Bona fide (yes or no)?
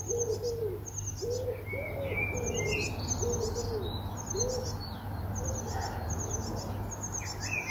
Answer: yes